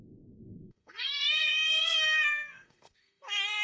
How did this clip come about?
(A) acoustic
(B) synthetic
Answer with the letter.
B